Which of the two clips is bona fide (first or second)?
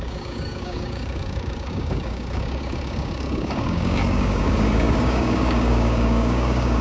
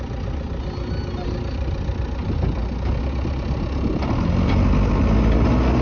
second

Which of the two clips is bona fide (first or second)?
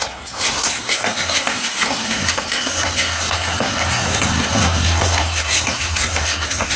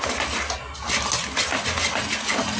second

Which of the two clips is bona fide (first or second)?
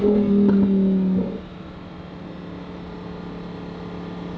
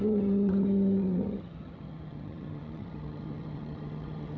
first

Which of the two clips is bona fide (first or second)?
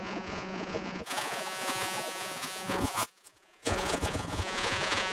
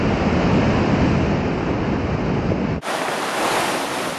second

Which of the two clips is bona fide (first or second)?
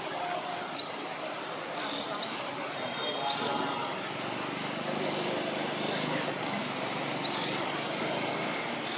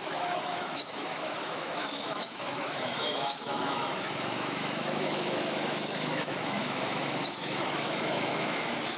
first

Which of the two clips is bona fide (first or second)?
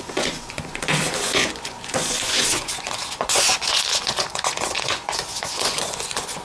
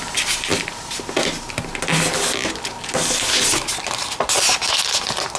second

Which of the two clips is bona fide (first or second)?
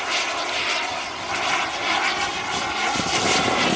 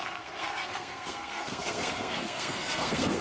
first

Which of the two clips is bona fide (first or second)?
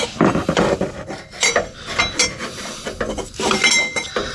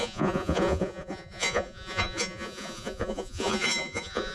first